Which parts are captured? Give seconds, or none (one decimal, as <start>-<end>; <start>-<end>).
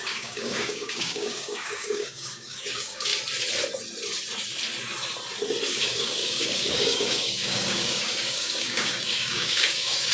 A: 3.1-5.7